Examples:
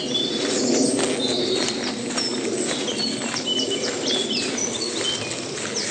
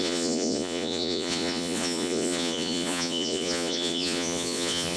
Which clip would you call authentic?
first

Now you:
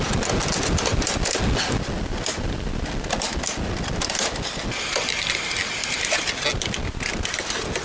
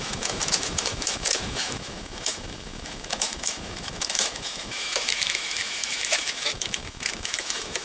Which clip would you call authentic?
first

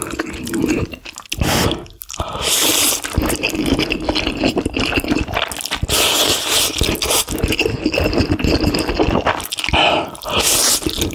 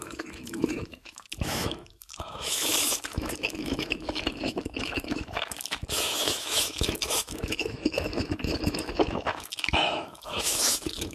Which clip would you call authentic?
first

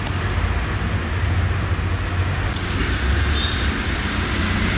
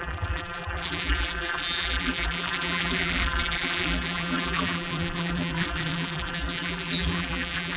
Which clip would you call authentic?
first